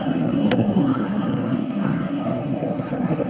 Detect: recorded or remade remade